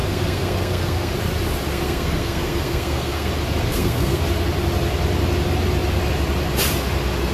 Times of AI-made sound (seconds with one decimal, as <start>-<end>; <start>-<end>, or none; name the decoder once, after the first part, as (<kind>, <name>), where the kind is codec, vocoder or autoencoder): 0.0-1.1 (codec, SNAC); 1.7-3.3; 3.7-4.2